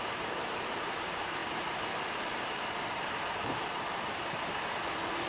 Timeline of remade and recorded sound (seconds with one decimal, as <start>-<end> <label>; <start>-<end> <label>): 0.0-5.3 remade